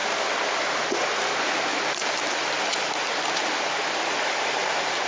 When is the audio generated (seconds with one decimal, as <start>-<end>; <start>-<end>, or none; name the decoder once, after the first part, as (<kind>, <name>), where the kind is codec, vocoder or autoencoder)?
none